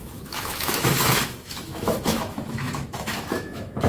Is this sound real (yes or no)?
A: no